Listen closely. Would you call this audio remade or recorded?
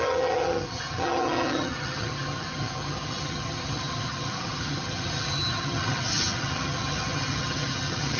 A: remade